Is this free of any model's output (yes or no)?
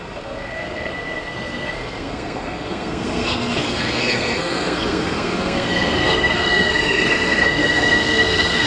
no